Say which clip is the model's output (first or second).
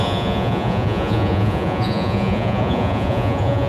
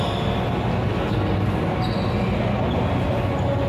first